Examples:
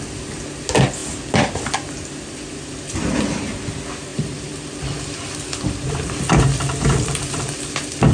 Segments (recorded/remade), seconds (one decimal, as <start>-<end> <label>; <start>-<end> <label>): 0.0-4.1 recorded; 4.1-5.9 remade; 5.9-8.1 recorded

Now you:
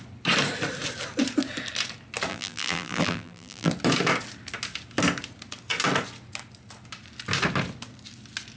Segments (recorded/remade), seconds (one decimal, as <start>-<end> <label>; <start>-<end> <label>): 0.0-2.3 recorded; 2.3-3.7 remade; 3.7-8.6 recorded

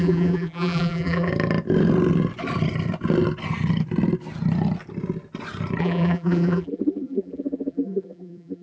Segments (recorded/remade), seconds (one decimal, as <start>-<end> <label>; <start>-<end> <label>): 0.0-1.3 remade; 1.3-5.8 recorded; 5.8-8.6 remade

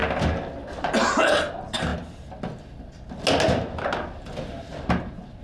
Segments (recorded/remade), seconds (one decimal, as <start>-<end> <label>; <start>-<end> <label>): 0.0-5.4 recorded

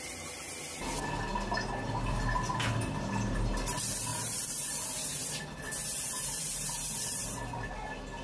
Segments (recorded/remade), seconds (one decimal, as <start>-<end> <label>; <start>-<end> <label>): 0.0-4.1 recorded; 4.1-7.7 remade; 7.7-8.2 recorded

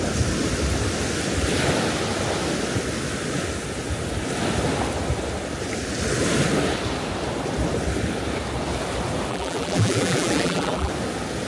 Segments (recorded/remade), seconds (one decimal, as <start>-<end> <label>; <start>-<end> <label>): 0.0-9.3 recorded; 9.3-10.9 remade; 10.9-11.5 recorded